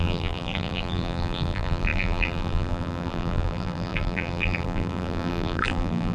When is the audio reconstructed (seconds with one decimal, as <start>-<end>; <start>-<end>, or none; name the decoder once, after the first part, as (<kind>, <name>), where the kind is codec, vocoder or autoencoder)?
0.0-6.1 (vocoder, BigVGAN v2)